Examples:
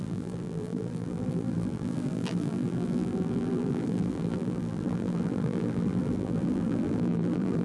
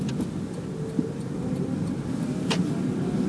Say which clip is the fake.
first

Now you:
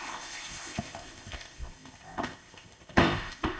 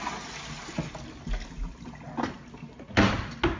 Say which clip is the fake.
first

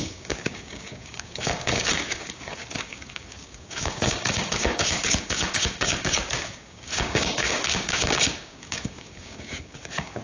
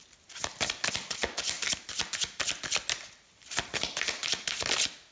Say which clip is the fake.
first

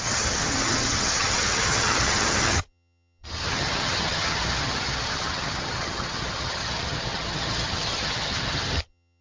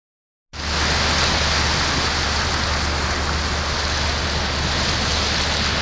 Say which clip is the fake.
first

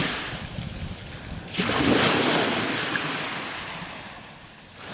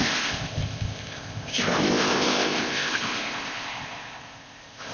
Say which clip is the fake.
second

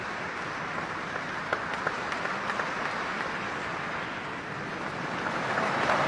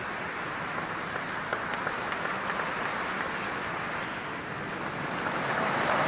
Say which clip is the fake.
first